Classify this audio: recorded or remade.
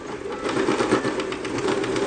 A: recorded